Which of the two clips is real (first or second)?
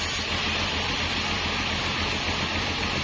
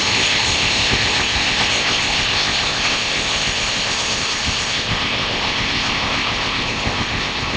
first